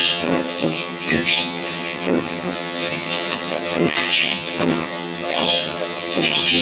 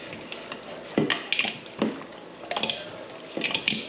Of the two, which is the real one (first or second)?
second